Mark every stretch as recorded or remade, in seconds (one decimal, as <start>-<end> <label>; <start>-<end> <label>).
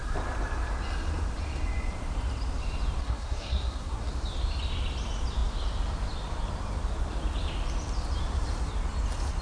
0.0-3.0 recorded; 3.0-4.1 remade; 4.1-9.4 recorded